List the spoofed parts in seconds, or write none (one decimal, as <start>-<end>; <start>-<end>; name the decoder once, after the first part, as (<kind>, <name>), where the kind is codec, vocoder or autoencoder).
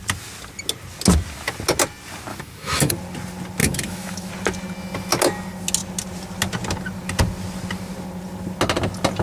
2.3-2.9 (autoencoder, DAC-VAE); 3.6-4.3